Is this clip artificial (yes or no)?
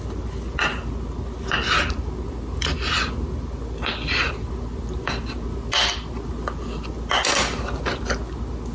no